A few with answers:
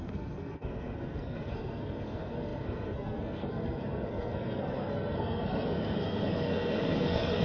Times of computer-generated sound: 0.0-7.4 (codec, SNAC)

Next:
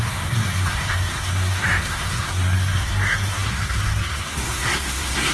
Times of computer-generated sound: 0.0-5.3 (codec, SNAC)

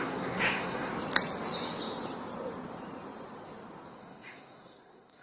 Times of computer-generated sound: 0.0-0.9 (codec, SNAC); 4.0-5.2